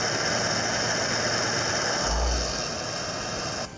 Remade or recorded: recorded